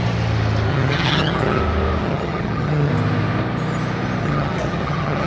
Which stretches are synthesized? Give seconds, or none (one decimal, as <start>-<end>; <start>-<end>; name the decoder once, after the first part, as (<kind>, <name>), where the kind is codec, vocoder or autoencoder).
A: 0.7-1.6 (vocoder, HiFi-GAN); 2.0-2.9; 4.2-5.3